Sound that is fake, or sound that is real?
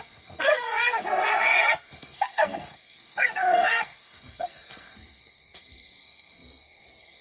fake